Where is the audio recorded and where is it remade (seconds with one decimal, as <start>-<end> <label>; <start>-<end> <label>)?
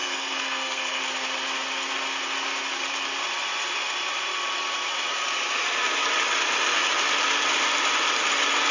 0.0-1.0 remade; 1.0-8.7 recorded